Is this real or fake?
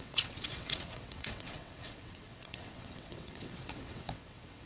fake